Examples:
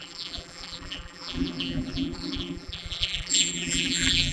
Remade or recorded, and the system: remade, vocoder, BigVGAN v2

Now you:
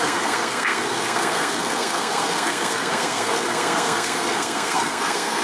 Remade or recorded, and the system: remade, codec, SNAC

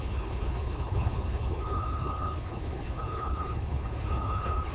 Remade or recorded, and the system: remade, codec, HILCodec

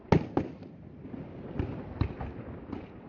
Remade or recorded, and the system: recorded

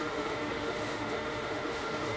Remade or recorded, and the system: remade, autoencoder, DAC-VAE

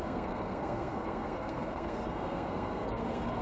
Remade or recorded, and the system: remade, codec, SNAC